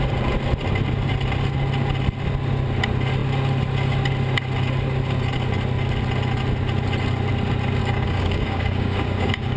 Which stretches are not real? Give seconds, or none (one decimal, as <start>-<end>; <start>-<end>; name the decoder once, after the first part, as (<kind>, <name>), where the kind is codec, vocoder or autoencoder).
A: 7.8-9.6 (codec, DAC)